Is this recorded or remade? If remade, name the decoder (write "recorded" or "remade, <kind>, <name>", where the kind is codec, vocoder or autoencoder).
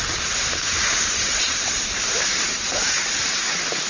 remade, vocoder, BigVGAN v2